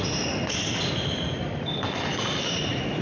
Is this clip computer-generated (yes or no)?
no